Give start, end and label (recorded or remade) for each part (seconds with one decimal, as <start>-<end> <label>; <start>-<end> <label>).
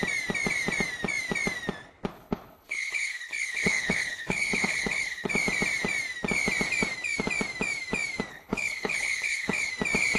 0.0-2.1 recorded; 2.1-5.3 remade; 5.3-8.3 recorded; 8.3-9.7 remade; 9.7-10.2 recorded